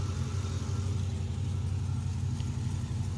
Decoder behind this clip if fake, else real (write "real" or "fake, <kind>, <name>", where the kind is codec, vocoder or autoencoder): real